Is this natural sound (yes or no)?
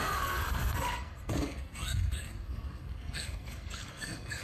no